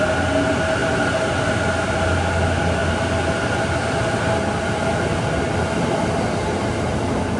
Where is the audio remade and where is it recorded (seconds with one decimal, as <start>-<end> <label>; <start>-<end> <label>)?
0.0-7.4 recorded